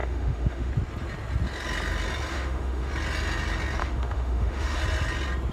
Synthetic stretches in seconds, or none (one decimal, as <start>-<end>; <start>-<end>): 0.0-0.7; 2.3-2.9; 3.8-4.8